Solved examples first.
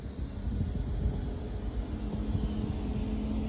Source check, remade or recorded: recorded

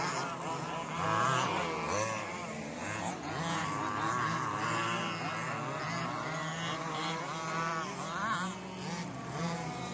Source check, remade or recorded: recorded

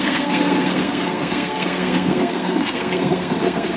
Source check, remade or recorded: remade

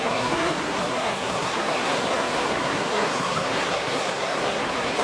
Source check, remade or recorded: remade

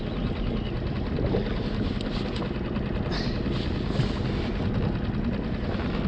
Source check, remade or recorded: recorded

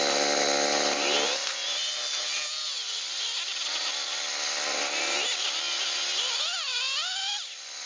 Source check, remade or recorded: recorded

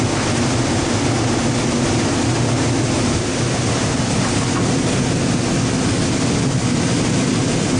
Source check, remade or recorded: recorded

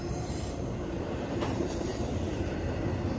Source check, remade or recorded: remade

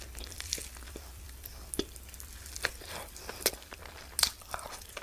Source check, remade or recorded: recorded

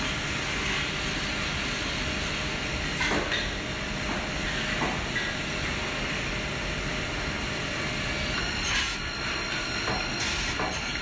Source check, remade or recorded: recorded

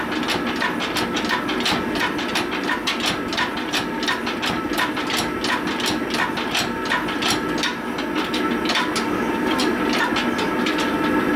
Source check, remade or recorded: recorded